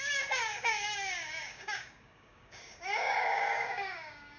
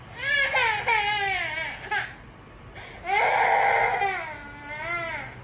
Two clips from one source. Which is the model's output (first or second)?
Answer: first